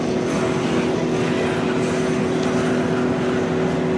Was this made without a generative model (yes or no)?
yes